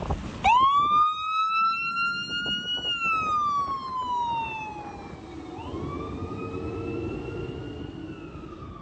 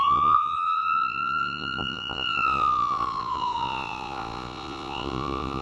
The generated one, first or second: second